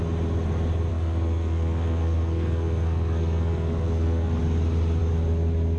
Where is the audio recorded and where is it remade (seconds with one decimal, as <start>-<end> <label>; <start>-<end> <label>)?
0.0-0.9 recorded; 0.9-4.4 remade; 4.4-5.8 recorded